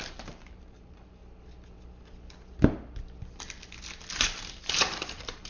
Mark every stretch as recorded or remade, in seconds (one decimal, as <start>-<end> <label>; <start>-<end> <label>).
0.0-1.2 remade; 1.2-4.5 recorded; 4.5-5.5 remade